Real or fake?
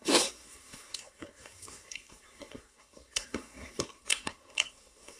fake